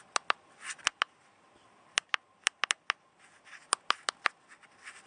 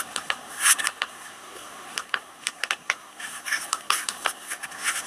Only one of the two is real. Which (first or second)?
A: first